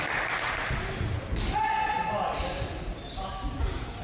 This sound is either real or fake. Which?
real